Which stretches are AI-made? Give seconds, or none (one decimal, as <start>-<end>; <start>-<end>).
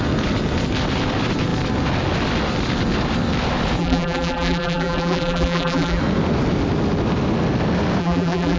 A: 3.8-6.0; 8.0-8.6